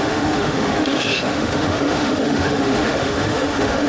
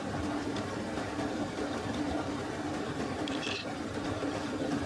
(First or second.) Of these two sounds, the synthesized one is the first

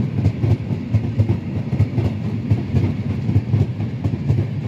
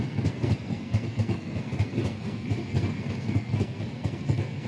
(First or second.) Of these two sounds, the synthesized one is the second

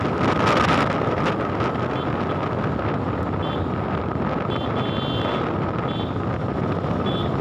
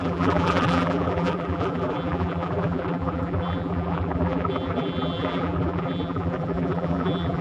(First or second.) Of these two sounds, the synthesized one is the second